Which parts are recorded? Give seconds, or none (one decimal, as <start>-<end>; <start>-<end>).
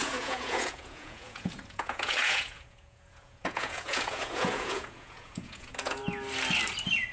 6.0-7.1